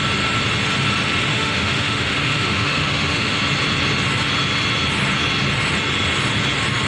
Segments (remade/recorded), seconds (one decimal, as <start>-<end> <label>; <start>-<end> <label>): 0.0-1.3 recorded; 1.3-3.4 remade; 3.4-6.9 recorded